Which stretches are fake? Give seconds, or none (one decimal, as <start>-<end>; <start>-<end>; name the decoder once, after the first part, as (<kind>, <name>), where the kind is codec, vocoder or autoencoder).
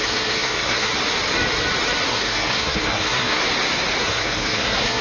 0.0-0.9 (codec, SNAC); 2.1-3.4; 4.0-5.0